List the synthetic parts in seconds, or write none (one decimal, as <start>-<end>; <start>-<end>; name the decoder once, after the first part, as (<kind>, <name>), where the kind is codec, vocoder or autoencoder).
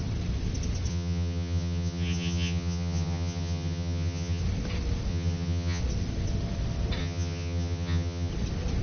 0.9-4.4 (vocoder, HiFi-GAN); 5.1-5.8; 7.0-8.3